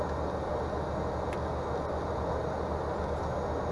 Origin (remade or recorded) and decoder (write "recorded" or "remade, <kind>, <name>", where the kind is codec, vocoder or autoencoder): recorded